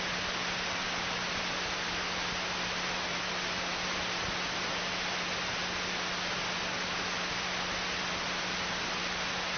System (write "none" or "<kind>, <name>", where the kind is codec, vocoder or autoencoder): none